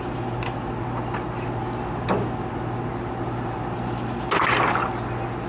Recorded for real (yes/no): yes